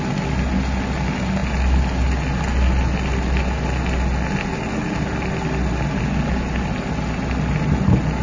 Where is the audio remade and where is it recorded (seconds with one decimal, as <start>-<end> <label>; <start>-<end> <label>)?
0.0-8.2 recorded